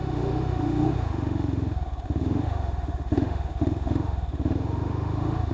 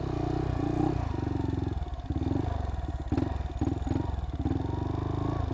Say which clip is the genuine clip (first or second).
second